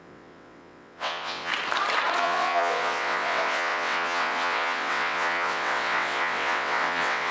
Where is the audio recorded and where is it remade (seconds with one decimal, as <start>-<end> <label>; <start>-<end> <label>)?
0.0-1.5 remade; 1.5-2.2 recorded; 2.2-7.3 remade